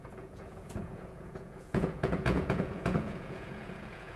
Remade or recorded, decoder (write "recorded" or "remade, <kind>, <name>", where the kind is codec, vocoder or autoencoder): remade, vocoder, Vocos